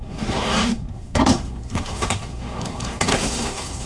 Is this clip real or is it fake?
fake